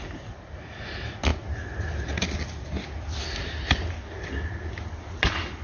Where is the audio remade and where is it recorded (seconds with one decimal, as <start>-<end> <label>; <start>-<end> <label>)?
0.0-5.6 recorded